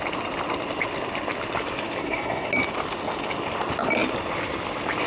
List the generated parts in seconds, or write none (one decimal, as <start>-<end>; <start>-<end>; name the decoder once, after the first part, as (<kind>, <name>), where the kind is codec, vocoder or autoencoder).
2.0-2.5 (codec, SNAC)